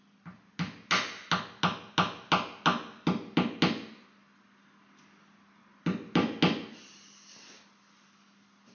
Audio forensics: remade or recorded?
recorded